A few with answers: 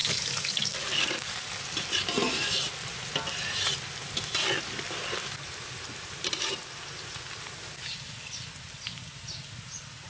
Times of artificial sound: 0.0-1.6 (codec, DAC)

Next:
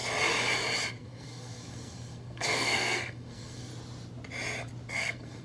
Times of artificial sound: 0.9-3.7 (codec, SNAC); 4.9-5.4

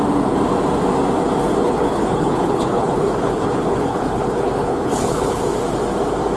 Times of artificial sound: 1.6-5.4 (codec, HILCodec)

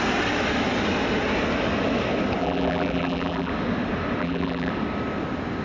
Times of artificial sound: 2.4-3.5 (vocoder, BigVGAN v2); 4.2-4.7

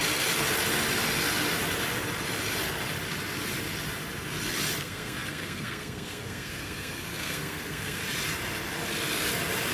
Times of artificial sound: 4.8-8.0 (codec, SNAC)